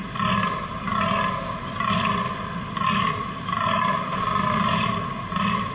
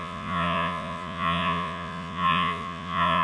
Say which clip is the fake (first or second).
second